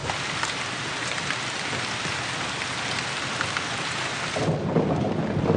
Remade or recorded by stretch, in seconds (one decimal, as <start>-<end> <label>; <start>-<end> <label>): 0.0-5.6 recorded